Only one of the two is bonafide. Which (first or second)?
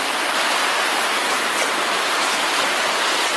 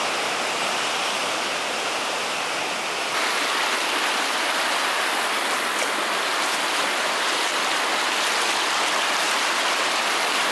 second